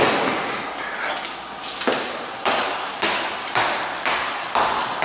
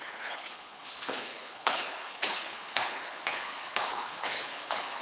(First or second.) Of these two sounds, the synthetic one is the second